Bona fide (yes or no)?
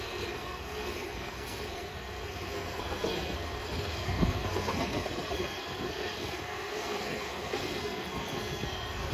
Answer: no